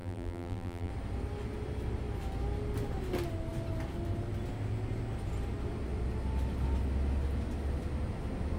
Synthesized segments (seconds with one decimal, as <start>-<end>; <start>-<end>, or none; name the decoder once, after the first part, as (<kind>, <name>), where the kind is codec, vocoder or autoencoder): 0.0-0.9 (vocoder, BigVGAN v2)